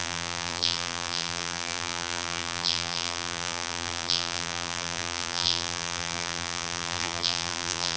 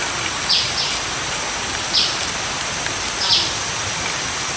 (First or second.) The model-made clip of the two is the first